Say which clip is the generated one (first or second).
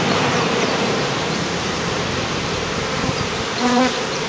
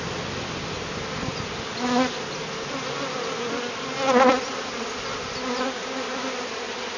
first